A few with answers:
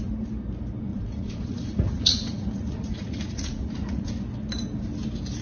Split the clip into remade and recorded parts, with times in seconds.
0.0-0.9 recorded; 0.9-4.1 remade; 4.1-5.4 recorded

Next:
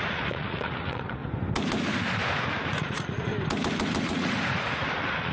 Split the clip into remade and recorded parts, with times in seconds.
0.0-1.2 remade; 1.2-2.7 recorded; 2.7-3.3 remade; 3.3-4.0 recorded; 4.0-5.3 remade

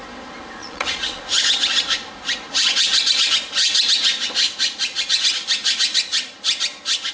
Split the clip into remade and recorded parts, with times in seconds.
0.0-0.6 recorded; 0.6-1.2 remade; 1.2-7.1 recorded

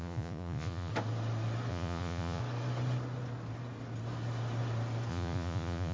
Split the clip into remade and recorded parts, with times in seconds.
0.0-0.9 remade; 0.9-1.7 recorded; 1.7-2.4 remade; 2.4-5.1 recorded; 5.1-5.9 remade